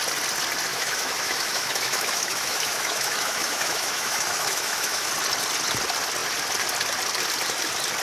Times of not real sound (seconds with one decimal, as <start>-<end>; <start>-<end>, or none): 0.7-5.1